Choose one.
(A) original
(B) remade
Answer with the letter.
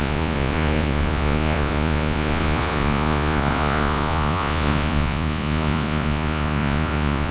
B